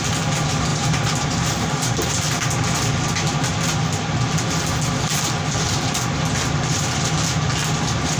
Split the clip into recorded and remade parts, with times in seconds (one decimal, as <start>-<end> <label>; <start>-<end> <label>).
0.0-0.7 recorded; 0.7-2.1 remade; 2.1-8.2 recorded